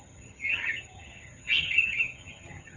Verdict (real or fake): fake